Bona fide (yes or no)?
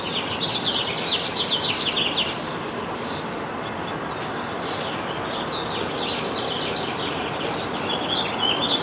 yes